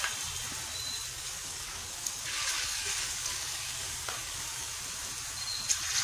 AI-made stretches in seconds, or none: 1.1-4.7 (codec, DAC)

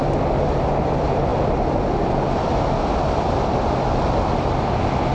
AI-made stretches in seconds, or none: none

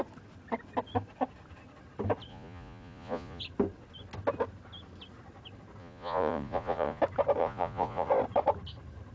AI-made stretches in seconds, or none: 2.3-3.4 (vocoder, Vocos); 5.8-7.0; 7.4-8.1

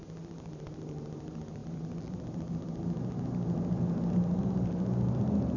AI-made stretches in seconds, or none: none

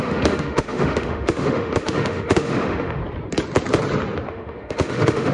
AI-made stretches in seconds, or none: 0.0-3.0 (autoencoder, DAC-VAE); 4.3-5.3

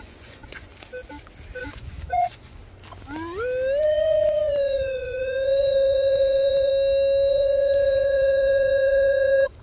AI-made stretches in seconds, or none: 0.0-0.7 (vocoder, Vocos); 1.6-2.6; 3.8-6.7; 7.3-9.6